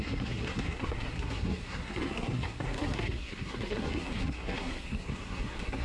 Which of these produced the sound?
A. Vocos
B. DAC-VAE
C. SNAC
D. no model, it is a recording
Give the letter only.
C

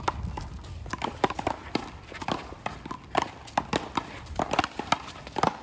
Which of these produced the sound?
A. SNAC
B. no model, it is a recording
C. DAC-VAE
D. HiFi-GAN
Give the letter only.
B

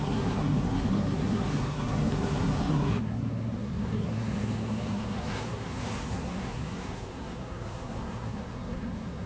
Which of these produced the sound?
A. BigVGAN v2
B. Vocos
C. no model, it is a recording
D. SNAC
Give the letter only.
D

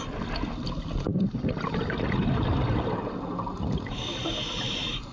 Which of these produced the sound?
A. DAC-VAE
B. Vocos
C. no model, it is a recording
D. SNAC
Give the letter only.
C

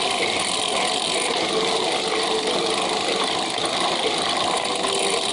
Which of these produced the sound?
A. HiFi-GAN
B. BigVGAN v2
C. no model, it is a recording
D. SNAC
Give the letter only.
C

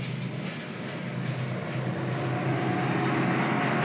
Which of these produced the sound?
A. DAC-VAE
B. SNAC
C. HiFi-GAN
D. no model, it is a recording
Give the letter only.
D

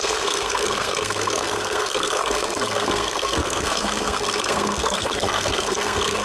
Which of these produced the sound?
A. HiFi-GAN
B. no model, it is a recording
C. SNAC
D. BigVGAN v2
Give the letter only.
C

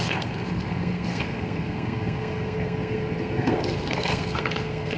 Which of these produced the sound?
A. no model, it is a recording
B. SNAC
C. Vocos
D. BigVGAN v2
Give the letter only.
B